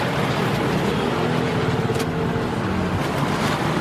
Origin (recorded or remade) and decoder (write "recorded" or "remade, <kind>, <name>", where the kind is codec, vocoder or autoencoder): recorded